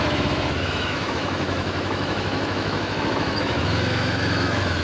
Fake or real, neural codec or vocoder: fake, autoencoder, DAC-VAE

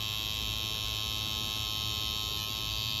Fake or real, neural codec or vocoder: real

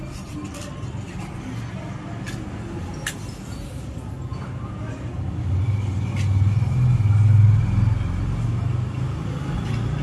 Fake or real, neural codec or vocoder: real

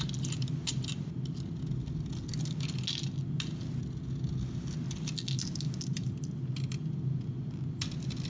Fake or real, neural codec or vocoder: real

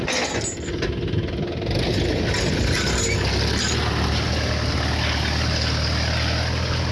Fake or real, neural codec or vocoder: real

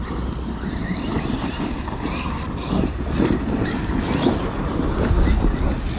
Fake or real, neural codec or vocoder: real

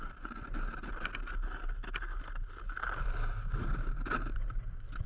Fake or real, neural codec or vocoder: real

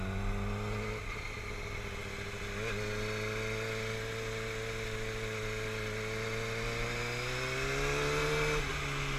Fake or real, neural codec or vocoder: real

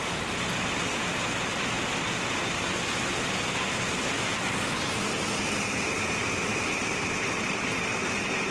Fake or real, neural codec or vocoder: real